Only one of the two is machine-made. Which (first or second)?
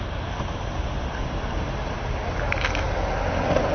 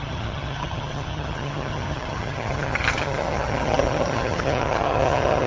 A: second